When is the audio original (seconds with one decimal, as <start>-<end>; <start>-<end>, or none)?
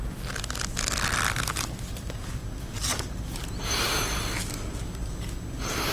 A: 0.0-5.9